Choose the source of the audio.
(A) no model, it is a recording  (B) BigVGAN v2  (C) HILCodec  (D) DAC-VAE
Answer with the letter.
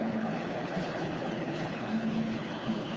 C